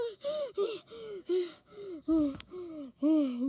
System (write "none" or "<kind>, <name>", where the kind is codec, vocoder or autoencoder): codec, DAC